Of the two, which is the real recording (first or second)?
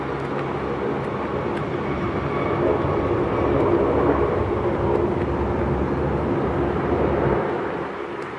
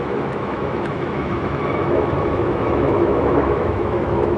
first